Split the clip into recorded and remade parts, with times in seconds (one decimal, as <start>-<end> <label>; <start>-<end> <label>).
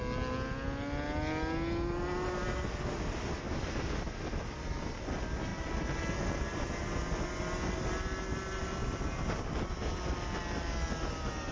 0.0-11.5 recorded